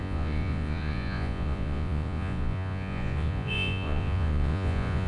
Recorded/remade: remade